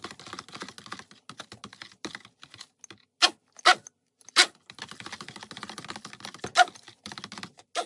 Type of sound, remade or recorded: recorded